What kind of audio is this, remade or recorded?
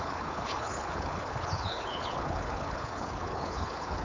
remade